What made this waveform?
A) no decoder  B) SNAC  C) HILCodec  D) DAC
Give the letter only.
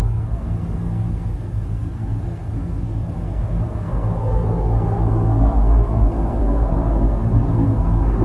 B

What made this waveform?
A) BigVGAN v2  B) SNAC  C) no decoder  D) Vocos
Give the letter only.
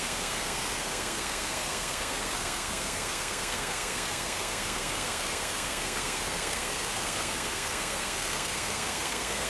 B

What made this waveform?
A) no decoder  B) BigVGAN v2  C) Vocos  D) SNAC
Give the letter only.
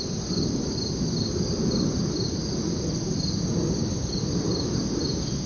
A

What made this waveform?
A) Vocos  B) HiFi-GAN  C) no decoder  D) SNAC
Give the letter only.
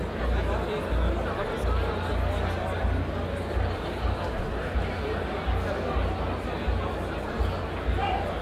C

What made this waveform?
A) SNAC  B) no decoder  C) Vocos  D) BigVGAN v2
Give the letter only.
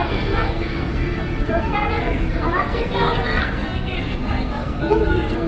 A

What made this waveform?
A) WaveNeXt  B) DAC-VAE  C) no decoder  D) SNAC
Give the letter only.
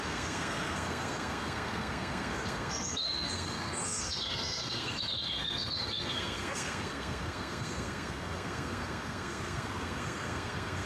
D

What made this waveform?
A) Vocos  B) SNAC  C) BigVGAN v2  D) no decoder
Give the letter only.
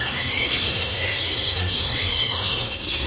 B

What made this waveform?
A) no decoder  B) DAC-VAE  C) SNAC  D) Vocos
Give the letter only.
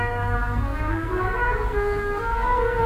C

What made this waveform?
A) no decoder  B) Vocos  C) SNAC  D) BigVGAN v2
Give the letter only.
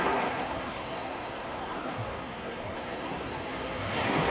C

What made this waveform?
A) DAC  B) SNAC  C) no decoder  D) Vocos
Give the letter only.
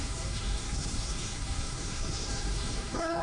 B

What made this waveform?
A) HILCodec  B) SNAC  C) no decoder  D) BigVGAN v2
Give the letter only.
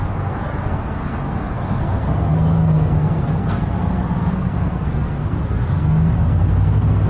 B